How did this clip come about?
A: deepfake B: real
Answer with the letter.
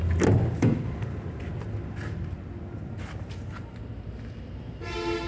B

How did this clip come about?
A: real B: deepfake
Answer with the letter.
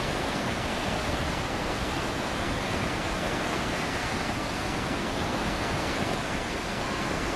B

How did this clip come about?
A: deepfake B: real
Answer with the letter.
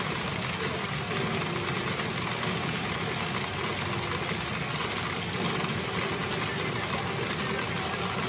B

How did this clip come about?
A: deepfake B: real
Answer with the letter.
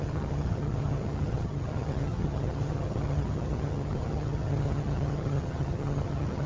A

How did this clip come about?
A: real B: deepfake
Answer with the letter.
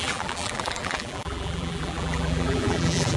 B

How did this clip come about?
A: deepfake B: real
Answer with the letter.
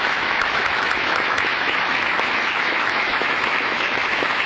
A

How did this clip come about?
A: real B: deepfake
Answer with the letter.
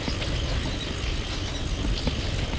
A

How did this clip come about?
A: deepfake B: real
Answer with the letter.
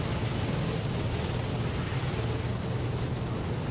B